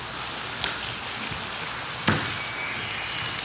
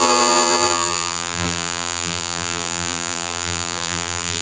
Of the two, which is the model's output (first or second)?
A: second